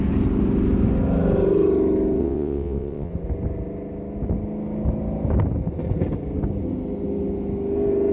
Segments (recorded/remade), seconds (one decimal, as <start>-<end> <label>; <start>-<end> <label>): 0.0-2.2 recorded; 2.2-3.1 remade; 3.1-8.1 recorded